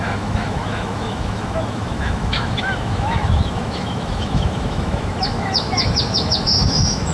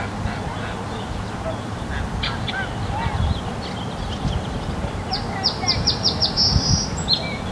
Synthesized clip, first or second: first